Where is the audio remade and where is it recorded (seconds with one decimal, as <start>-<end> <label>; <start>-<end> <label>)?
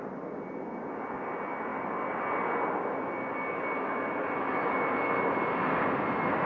0.0-6.5 recorded